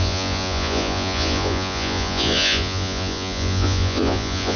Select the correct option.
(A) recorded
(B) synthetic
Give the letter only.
B